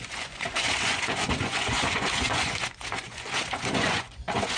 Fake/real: fake